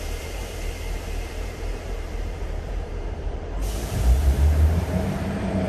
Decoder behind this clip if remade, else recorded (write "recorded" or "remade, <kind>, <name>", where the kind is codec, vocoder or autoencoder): remade, vocoder, BigVGAN v2